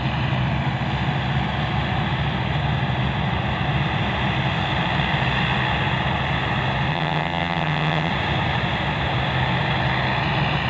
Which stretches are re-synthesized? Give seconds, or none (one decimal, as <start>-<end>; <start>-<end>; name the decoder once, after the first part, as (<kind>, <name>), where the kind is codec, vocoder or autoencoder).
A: 6.9-8.1 (vocoder, HiFi-GAN)